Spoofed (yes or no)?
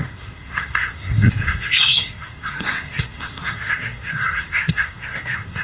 yes